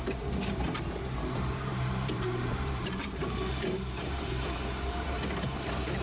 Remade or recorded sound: remade